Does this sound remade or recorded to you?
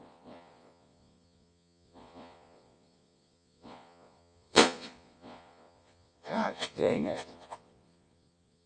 remade